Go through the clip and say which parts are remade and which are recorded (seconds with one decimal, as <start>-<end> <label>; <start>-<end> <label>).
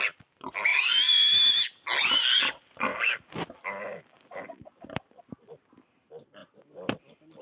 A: 0.0-2.9 recorded; 2.9-5.0 remade; 5.0-6.4 recorded; 6.4-7.4 remade